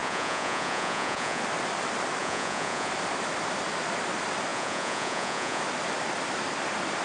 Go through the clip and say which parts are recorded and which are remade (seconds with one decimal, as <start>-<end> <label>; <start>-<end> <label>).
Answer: 0.0-1.4 remade; 1.4-2.2 recorded; 2.2-2.9 remade; 2.9-4.5 recorded; 4.5-5.6 remade; 5.6-7.0 recorded